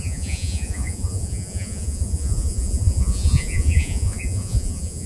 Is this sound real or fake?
fake